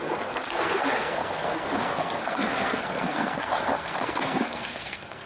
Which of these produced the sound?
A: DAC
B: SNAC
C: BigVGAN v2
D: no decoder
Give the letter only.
B